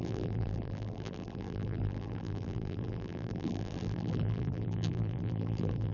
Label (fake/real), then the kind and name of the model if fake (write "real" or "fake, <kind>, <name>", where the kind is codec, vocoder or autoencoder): fake, vocoder, BigVGAN v2